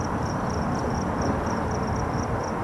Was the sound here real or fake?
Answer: fake